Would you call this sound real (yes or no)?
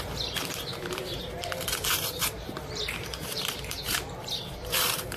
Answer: no